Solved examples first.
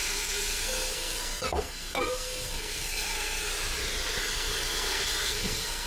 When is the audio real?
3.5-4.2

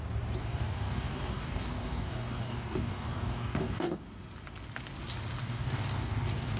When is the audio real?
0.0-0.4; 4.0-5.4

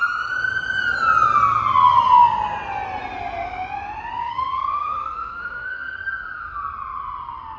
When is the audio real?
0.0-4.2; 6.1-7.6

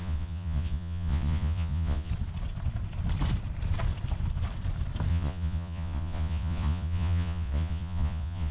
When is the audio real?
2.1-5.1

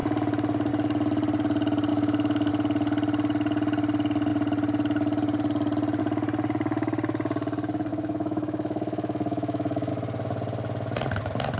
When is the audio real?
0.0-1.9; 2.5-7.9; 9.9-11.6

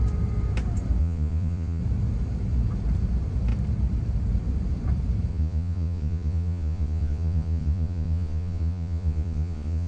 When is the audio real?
0.0-1.0; 1.8-5.3

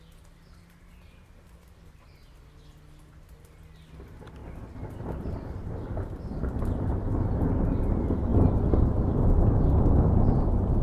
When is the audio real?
0.0-10.8

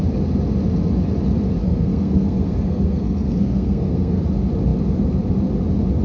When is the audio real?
0.0-1.6; 4.2-6.0